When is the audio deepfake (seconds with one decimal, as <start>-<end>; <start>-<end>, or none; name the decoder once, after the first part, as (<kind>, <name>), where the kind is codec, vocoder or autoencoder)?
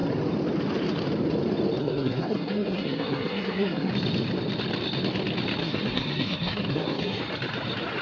1.8-3.9 (codec, SNAC); 5.6-7.2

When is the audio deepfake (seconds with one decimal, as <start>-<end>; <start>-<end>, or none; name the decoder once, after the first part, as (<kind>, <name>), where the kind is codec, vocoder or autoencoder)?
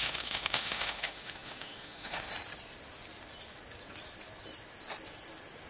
0.0-2.3 (autoencoder, DAC-VAE)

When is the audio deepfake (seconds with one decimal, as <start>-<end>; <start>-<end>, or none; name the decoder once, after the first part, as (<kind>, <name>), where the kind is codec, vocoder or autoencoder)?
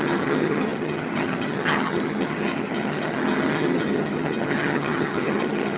0.0-5.8 (vocoder, HiFi-GAN)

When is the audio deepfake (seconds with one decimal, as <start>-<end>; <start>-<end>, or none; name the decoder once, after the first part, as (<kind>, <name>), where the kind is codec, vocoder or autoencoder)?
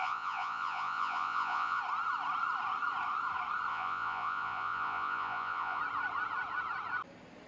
0.0-1.8 (vocoder, Vocos); 3.7-5.8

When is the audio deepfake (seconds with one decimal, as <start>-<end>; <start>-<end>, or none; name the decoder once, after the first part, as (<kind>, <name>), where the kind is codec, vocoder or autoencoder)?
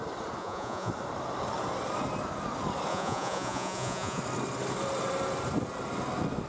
0.4-0.9 (vocoder, Vocos); 2.9-4.2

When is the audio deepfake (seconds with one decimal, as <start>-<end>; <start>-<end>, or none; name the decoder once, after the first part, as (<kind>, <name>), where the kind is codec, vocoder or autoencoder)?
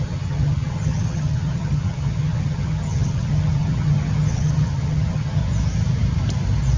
0.0-5.4 (vocoder, HiFi-GAN)